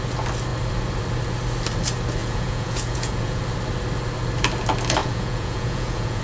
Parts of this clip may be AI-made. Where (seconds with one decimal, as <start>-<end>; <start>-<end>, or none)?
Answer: 2.2-3.4; 5.0-6.2